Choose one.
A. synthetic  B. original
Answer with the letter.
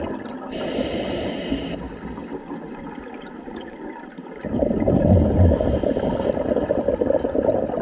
B